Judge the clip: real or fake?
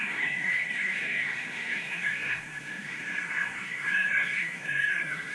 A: fake